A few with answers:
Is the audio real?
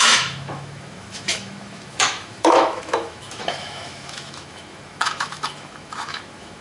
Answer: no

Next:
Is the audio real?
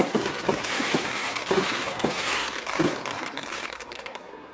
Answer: no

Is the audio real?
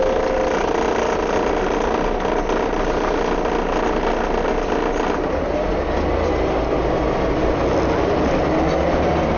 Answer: yes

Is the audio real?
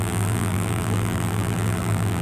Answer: no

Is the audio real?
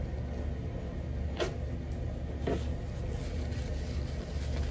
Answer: yes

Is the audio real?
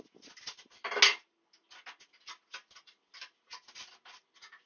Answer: yes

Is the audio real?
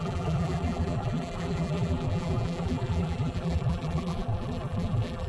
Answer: no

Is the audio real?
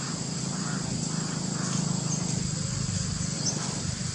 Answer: yes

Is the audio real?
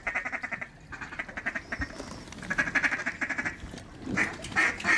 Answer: yes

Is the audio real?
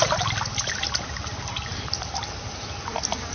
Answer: yes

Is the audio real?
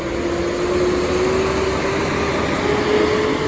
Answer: yes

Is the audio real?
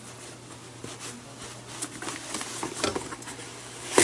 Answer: yes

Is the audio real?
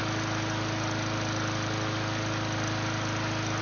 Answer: yes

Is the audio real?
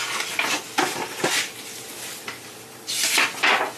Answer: yes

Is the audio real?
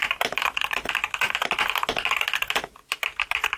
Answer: yes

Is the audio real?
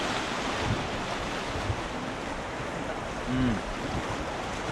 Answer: yes